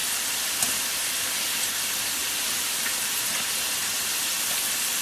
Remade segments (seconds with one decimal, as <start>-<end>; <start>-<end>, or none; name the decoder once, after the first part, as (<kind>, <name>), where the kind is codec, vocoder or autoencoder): 2.2-2.9 (vocoder, BigVGAN v2)